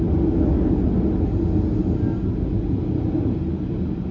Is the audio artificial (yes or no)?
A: no